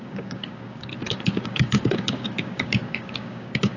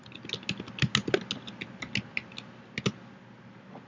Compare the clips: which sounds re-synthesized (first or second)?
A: first